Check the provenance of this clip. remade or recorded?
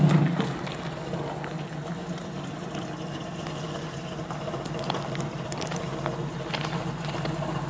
recorded